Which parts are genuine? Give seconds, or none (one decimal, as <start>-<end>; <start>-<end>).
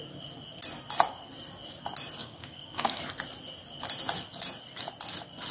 0.0-2.2; 3.0-5.5